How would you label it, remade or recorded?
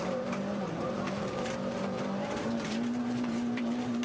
remade